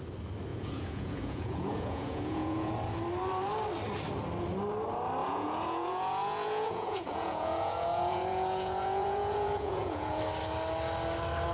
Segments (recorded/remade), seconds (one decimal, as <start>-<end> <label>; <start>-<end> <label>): 0.0-0.5 recorded; 0.5-2.7 remade; 2.7-5.2 recorded; 5.2-10.2 remade; 10.2-11.5 recorded